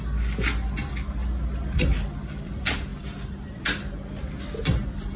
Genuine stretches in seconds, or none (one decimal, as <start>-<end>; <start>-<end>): 0.0-1.9; 2.5-2.9; 3.6-5.2